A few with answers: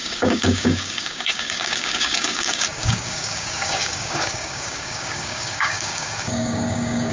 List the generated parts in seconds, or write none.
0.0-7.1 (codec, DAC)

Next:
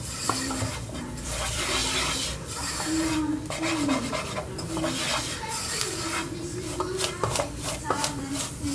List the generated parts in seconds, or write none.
0.0-1.8 (vocoder, BigVGAN v2); 6.3-8.7

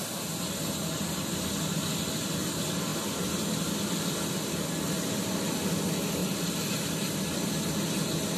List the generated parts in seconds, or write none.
2.9-4.9 (vocoder, BigVGAN v2); 6.2-8.4

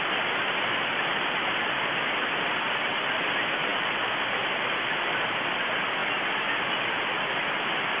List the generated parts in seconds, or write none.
none

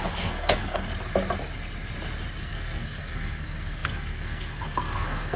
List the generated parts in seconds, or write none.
0.0-0.9 (codec, SNAC); 2.4-5.4

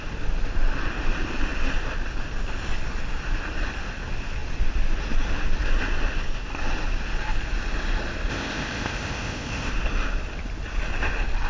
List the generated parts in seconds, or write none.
8.3-9.7 (codec, ZipCodec)